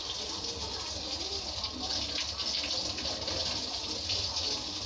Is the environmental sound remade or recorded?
recorded